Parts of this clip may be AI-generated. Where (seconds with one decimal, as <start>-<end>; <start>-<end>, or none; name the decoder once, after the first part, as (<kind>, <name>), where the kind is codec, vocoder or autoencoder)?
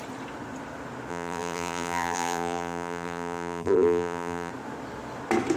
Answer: 1.1-4.5 (vocoder, BigVGAN v2)